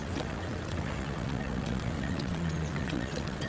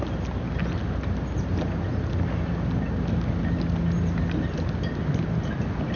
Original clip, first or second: second